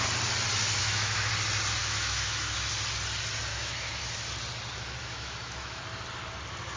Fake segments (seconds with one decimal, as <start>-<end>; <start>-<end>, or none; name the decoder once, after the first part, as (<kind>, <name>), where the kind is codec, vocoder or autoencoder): 0.8-1.3 (autoencoder, DAC-VAE); 1.8-2.7; 3.5-4.0; 5.0-5.8